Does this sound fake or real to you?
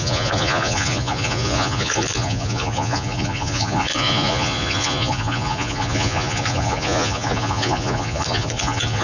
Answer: fake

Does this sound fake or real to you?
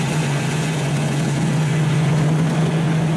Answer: fake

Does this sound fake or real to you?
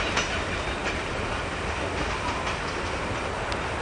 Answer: real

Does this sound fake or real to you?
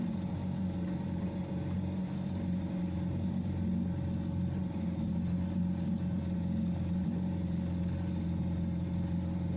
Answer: real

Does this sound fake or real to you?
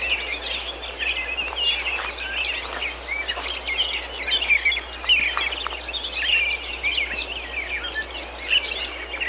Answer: real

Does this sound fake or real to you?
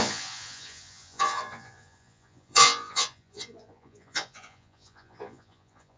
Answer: fake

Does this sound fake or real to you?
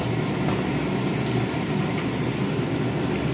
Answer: real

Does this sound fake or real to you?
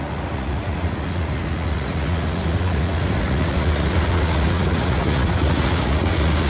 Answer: fake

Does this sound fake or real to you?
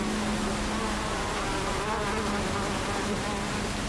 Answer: real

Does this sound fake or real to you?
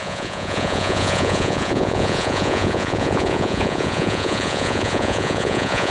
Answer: fake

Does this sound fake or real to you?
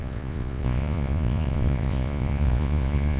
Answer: fake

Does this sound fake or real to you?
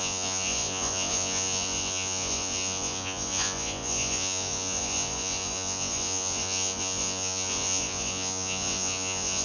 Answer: fake